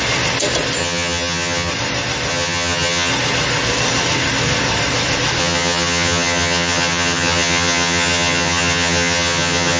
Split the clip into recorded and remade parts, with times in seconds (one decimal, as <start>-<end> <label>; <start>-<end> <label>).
0.0-0.8 recorded; 0.8-1.7 remade; 1.7-2.3 recorded; 2.3-3.1 remade; 3.1-5.4 recorded; 5.4-9.8 remade